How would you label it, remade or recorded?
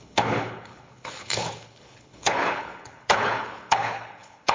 remade